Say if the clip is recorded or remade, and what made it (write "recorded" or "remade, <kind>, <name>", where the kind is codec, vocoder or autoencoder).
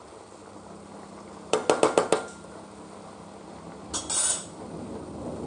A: recorded